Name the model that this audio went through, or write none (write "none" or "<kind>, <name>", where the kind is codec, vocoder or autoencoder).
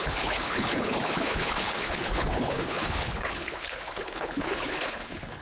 codec, HILCodec